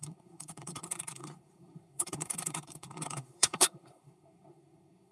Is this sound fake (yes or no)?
yes